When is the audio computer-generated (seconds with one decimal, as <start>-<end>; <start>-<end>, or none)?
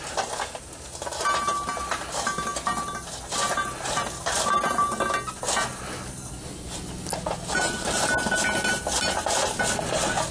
none